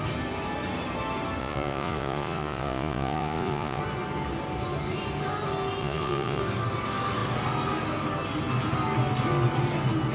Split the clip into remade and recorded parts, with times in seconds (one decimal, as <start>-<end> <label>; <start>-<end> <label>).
0.0-1.4 recorded; 1.4-3.8 remade; 3.8-5.8 recorded; 5.8-6.4 remade; 6.4-10.1 recorded